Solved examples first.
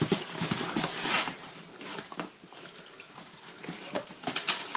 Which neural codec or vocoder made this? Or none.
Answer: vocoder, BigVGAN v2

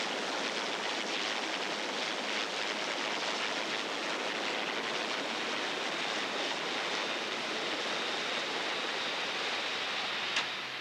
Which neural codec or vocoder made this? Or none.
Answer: none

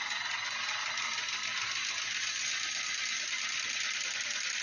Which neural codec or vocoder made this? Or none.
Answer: none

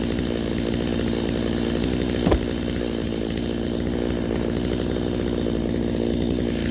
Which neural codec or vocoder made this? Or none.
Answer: none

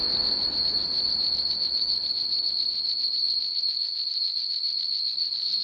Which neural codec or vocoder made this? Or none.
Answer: none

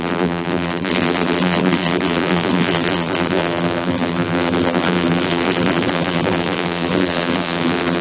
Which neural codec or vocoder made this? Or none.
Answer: vocoder, BigVGAN v2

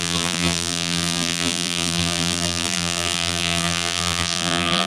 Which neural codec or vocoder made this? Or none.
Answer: vocoder, BigVGAN v2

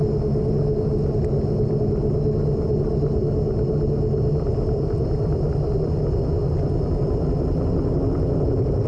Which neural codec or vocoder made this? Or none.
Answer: none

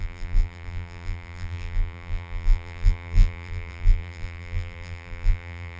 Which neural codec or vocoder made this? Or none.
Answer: vocoder, BigVGAN v2